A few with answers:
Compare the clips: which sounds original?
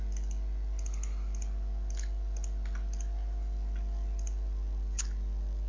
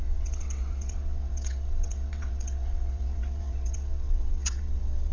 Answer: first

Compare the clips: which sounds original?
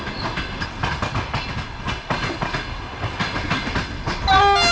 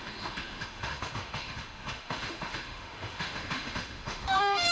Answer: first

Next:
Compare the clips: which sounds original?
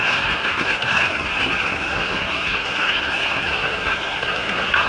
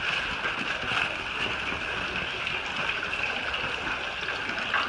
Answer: second